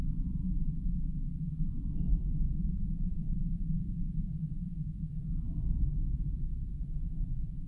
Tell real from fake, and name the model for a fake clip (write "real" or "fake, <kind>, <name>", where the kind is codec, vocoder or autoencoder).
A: fake, vocoder, BigVGAN v2